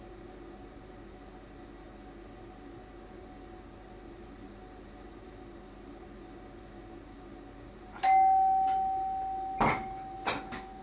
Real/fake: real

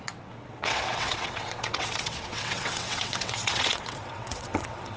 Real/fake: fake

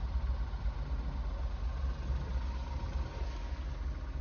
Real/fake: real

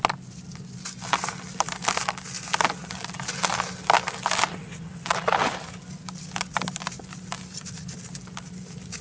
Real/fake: real